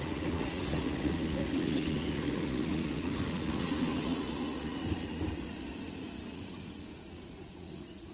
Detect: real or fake fake